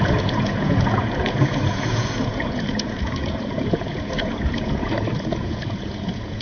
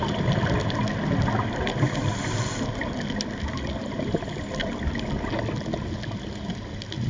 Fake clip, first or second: first